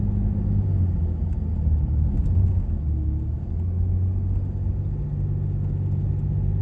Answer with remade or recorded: recorded